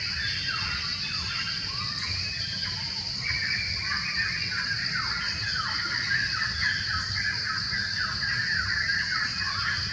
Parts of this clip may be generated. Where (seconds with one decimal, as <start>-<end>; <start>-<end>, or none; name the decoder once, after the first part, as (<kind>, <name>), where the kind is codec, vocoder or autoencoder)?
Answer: none